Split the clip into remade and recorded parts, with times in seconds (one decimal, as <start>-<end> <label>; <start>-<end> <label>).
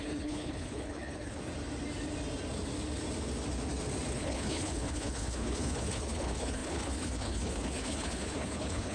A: 0.0-1.4 remade; 1.4-4.1 recorded; 4.1-8.9 remade